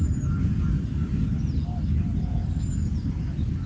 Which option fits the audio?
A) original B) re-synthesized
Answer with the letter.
A